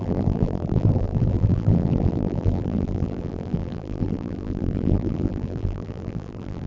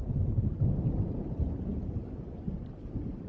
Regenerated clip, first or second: first